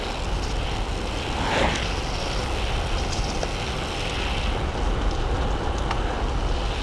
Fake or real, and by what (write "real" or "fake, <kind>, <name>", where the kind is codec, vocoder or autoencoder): real